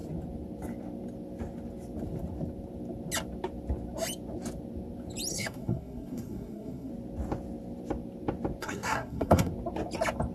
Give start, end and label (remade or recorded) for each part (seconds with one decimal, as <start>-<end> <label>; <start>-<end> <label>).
0.0-5.3 recorded; 5.3-6.9 remade; 6.9-8.6 recorded; 8.6-9.5 remade; 9.5-10.3 recorded